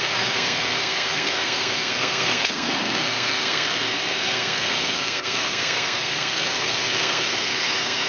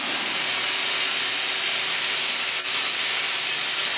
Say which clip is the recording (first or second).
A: second